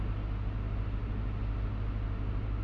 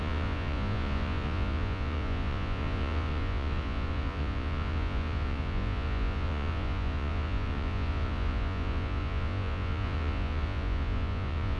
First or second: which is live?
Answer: first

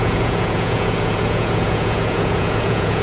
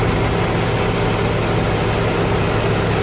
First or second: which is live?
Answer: second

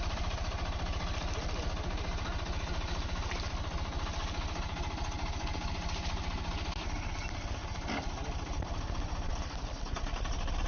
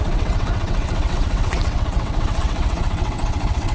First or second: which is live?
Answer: first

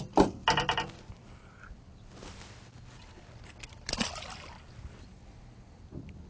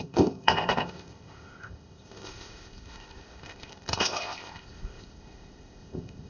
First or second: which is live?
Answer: first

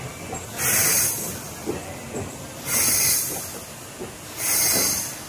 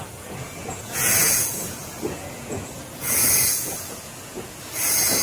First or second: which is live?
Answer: first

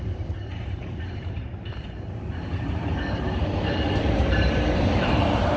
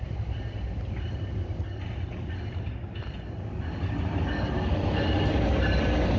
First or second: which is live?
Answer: second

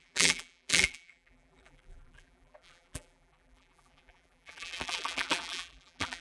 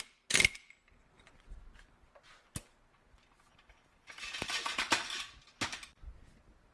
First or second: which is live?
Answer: second